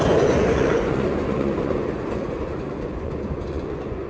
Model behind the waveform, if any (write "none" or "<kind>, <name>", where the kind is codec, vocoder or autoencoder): vocoder, Vocos